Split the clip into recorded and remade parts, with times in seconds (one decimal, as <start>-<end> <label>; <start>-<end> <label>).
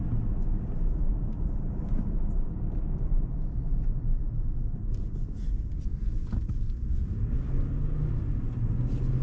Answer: 0.0-1.0 recorded; 1.0-3.3 remade; 3.3-9.2 recorded